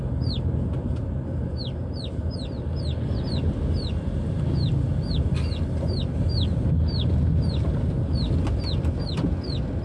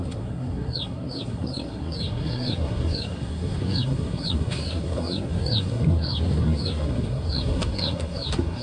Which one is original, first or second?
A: first